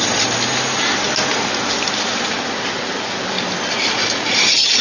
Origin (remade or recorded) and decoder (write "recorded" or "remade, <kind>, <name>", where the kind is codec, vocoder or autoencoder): recorded